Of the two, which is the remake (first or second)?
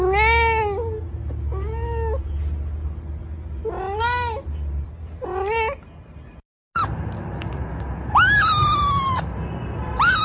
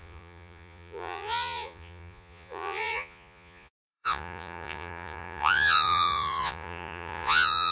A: second